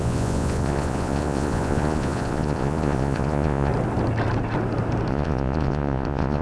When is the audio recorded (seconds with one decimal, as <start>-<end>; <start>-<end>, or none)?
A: 3.7-5.1

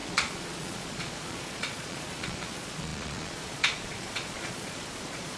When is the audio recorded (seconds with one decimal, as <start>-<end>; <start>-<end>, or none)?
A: none

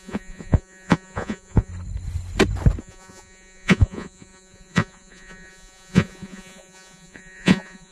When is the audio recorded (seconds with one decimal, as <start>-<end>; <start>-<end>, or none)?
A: 1.7-2.8

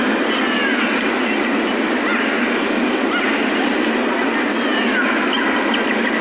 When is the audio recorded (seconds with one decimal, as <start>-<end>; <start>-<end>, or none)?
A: 0.0-6.2

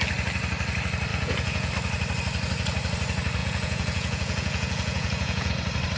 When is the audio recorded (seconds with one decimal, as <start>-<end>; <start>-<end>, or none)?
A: 0.0-1.1; 1.7-3.4; 5.5-6.0

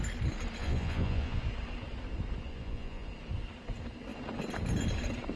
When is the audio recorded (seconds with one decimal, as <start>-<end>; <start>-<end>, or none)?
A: 0.0-0.6; 1.4-2.5; 3.1-5.4

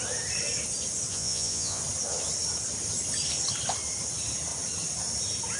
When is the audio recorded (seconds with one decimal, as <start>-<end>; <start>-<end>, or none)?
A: 0.0-1.1; 1.8-5.6

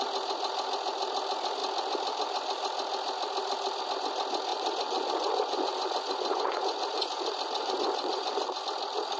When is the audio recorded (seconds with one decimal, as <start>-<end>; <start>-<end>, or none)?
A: 0.0-4.5; 8.6-9.2